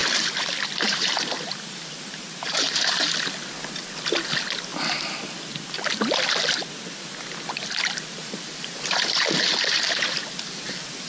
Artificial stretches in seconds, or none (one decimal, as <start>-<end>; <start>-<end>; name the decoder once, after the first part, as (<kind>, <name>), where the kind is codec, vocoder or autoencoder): 0.0-3.1 (vocoder, BigVGAN v2); 8.2-10.3